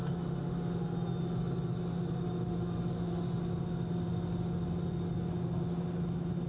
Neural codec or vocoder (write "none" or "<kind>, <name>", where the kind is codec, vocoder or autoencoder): none